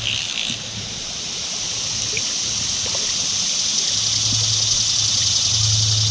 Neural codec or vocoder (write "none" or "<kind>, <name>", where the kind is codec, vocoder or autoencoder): none